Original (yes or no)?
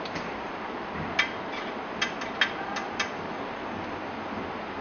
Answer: yes